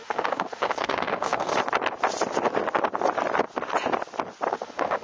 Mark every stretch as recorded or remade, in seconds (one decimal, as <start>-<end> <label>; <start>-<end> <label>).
0.0-1.5 remade; 1.5-4.5 recorded; 4.5-5.0 remade